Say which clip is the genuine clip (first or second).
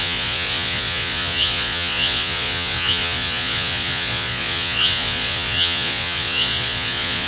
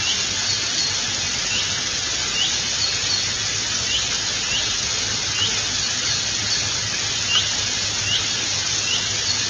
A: second